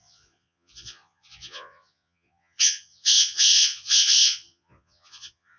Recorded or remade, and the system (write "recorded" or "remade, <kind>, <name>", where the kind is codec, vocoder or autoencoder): remade, vocoder, Vocos